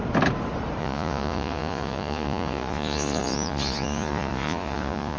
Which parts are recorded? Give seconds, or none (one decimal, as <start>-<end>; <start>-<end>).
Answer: 0.0-0.8